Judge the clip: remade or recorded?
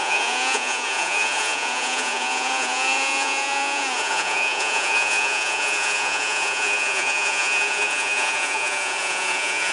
remade